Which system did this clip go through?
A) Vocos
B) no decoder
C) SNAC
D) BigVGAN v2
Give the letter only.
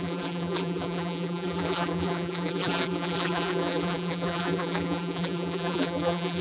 D